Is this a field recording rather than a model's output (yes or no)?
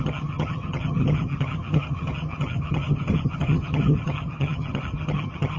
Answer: no